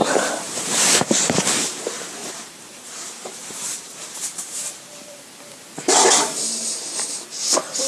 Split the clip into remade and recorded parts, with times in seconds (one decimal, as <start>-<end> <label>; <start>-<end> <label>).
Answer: 0.0-1.4 remade; 1.4-2.2 recorded; 2.2-5.2 remade; 5.2-7.9 recorded

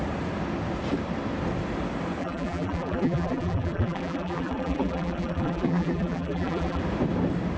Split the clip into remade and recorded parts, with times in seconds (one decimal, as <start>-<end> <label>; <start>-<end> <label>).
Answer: 0.0-2.2 recorded; 2.2-6.8 remade; 6.8-7.6 recorded

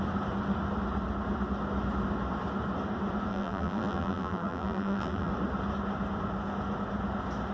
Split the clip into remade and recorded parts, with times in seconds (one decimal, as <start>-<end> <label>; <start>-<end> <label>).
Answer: 0.0-3.3 recorded; 3.3-5.3 remade; 5.3-7.5 recorded

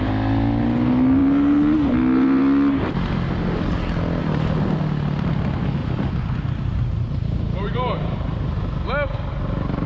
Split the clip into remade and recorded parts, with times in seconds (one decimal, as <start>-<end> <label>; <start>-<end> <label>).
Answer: 0.0-5.8 recorded; 5.8-8.5 remade; 8.5-9.9 recorded

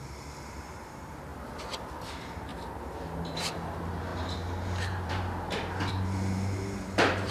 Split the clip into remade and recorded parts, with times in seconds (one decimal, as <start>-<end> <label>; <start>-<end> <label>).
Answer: 0.0-1.3 remade; 1.3-2.0 recorded; 2.0-2.5 remade; 2.5-3.3 recorded; 3.3-7.3 remade

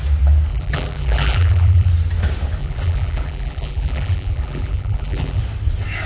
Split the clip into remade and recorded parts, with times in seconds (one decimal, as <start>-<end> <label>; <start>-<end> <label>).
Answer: 0.0-0.5 recorded; 0.5-1.9 remade; 1.9-2.6 recorded; 2.6-5.4 remade; 5.4-6.1 recorded